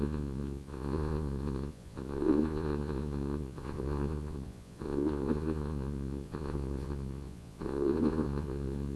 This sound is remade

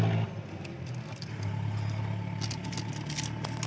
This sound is recorded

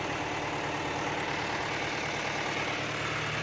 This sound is recorded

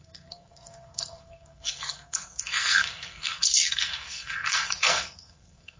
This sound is remade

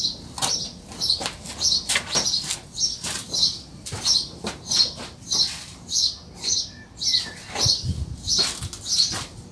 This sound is recorded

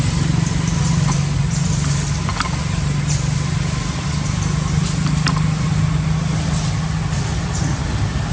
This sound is remade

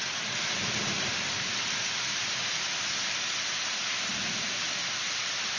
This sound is recorded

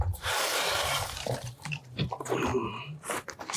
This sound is remade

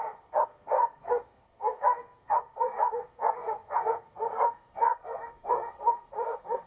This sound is remade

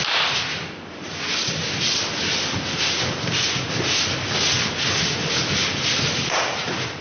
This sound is recorded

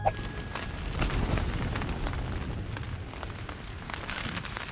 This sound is remade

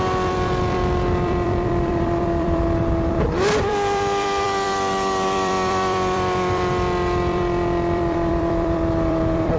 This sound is remade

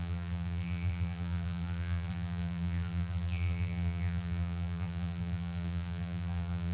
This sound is remade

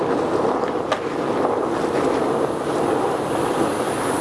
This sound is recorded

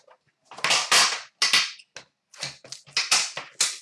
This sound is recorded